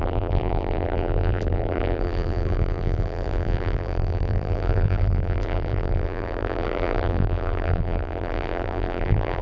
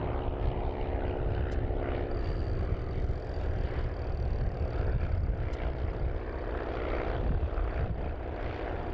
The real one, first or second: second